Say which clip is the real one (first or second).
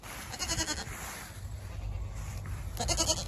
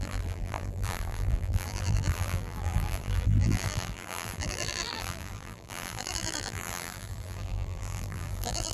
first